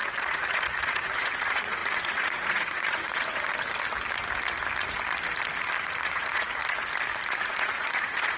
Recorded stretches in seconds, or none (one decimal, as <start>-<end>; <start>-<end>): 3.5-5.8; 6.6-7.4